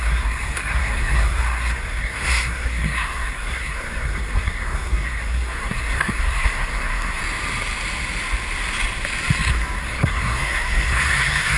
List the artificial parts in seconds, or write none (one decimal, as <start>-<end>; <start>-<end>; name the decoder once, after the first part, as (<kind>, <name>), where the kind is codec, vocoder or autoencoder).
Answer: 0.0-7.2 (codec, SNAC); 9.8-11.6